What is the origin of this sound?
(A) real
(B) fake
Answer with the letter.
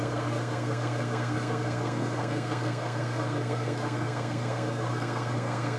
B